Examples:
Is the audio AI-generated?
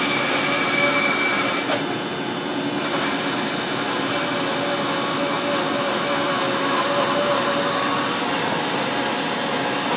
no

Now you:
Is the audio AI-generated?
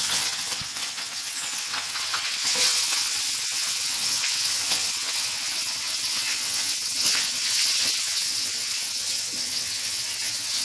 yes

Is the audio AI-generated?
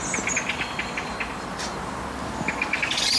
no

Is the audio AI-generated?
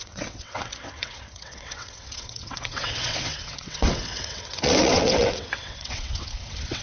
yes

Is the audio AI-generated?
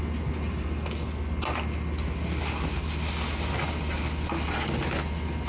no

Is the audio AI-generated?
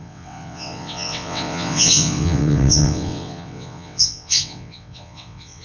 yes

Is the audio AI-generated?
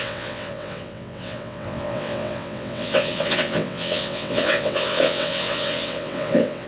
yes